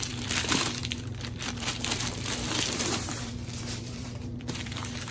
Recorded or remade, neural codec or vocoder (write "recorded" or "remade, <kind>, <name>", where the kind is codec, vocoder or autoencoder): remade, vocoder, BigVGAN v2